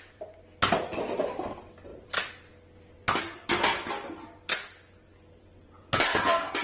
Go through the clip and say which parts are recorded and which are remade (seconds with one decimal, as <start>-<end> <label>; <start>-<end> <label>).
0.0-6.6 recorded